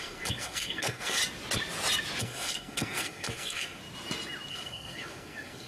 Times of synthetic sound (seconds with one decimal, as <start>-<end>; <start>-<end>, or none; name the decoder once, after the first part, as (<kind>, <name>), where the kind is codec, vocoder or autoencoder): 0.0-1.2 (codec, SNAC); 2.2-3.8; 4.5-5.7